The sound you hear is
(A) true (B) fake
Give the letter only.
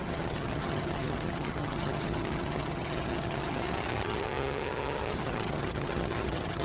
B